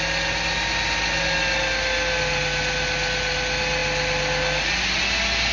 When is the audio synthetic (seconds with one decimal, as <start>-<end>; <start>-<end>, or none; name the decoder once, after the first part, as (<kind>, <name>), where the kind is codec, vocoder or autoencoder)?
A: none